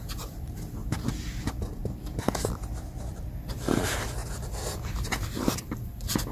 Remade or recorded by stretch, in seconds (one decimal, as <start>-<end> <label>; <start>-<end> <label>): 0.0-0.8 remade; 0.8-1.4 recorded; 1.4-6.3 remade